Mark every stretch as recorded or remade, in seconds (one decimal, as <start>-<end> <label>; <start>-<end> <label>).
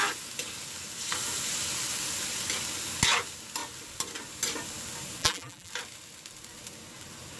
0.0-5.2 recorded; 5.2-5.7 remade; 5.7-7.4 recorded